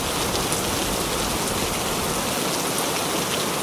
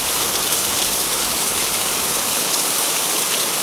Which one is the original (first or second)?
first